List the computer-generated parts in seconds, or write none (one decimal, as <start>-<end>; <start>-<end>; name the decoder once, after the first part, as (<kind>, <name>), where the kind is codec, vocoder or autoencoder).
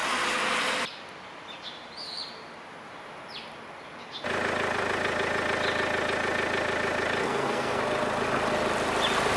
7.2-7.8 (codec, SNAC)